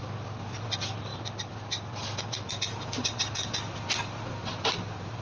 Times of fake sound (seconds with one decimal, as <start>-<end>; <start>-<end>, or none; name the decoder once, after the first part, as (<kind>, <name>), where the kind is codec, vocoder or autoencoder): none